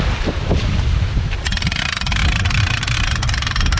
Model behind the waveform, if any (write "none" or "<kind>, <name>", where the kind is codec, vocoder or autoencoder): none